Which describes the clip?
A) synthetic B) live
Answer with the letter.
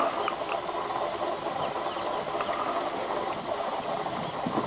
B